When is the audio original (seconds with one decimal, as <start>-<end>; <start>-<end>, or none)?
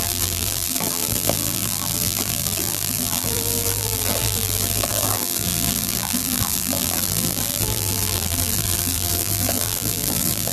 none